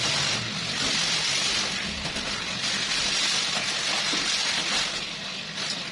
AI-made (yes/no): no